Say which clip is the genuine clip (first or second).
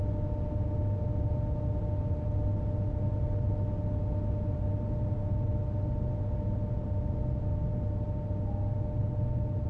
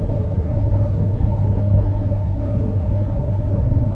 first